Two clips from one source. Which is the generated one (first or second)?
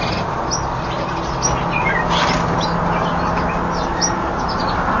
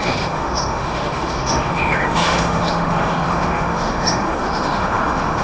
second